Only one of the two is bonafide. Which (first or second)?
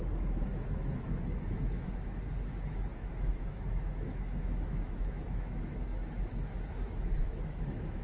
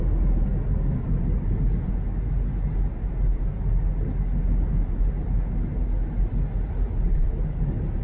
second